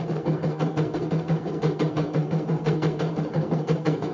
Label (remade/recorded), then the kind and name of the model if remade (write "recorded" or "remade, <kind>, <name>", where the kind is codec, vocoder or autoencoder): remade, codec, SNAC